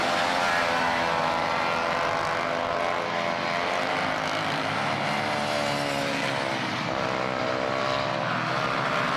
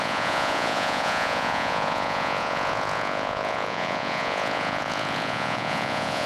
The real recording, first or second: first